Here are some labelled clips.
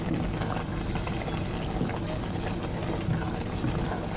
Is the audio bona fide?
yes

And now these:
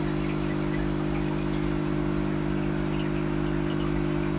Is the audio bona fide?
yes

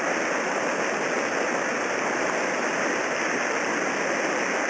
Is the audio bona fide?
yes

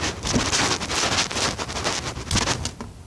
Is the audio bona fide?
yes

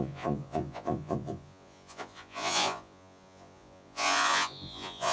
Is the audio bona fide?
no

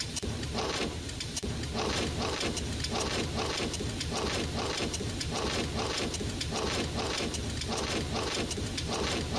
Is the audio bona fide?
no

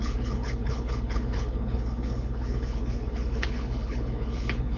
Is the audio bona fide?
no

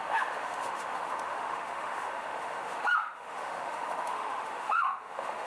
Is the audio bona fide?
no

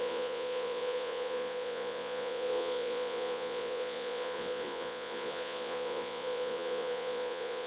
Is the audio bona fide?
no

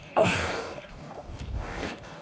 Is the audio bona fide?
no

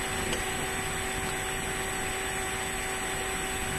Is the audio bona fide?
yes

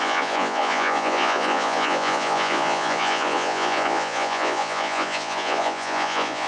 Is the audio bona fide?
no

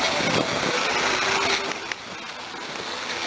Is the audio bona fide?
yes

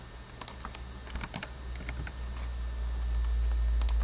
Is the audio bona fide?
yes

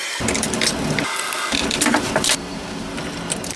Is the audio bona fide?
no